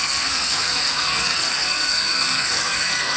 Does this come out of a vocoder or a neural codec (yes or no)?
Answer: yes